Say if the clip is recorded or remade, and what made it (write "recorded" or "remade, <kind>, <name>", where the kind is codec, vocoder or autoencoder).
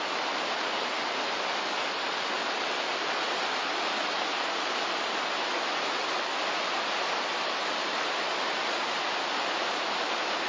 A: recorded